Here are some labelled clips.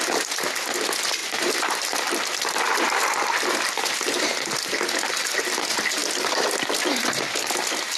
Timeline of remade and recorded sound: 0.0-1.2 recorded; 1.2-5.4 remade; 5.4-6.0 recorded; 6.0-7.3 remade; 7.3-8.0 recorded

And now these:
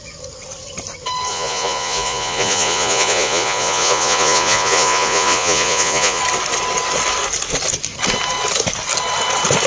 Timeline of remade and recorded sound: 0.0-1.3 recorded; 1.3-6.2 remade; 6.2-9.7 recorded

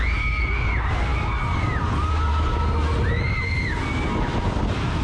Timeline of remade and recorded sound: 0.0-5.0 recorded

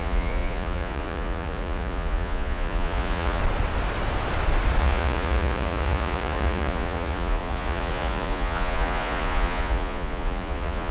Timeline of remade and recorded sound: 0.0-3.4 remade; 3.4-4.8 recorded; 4.8-10.9 remade

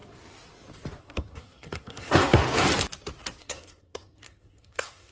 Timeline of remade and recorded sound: 0.0-1.0 recorded; 1.0-2.4 remade; 2.4-3.4 recorded; 3.4-5.1 remade